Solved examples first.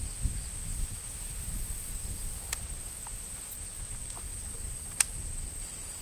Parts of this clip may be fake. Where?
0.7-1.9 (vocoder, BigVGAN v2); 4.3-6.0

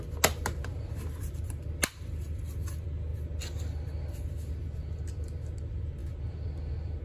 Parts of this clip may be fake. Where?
none

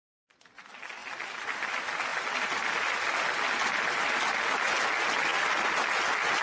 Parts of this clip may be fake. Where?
none

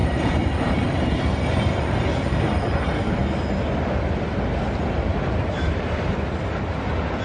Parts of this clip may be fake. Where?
0.0-2.8 (vocoder, BigVGAN v2); 5.1-6.1

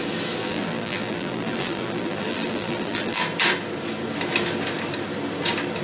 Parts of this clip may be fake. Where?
0.4-3.2 (vocoder, BigVGAN v2)

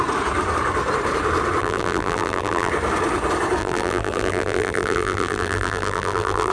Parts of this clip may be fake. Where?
1.6-2.7 (vocoder, BigVGAN v2); 3.6-6.5

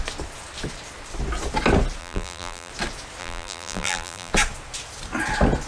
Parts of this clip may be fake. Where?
2.0-2.7 (vocoder, BigVGAN v2); 3.2-4.3

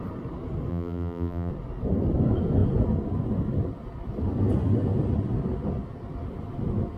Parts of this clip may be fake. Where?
0.7-1.5 (vocoder, BigVGAN v2)